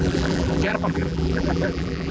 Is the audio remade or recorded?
remade